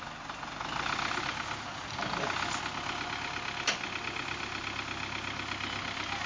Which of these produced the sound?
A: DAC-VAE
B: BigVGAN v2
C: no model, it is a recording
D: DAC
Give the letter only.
C